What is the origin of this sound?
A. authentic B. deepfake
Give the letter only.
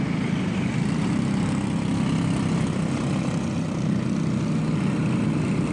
A